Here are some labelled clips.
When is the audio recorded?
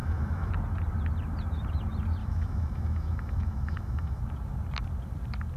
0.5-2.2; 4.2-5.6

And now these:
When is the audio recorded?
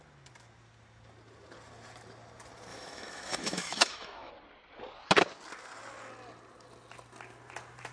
0.0-2.7; 4.3-7.9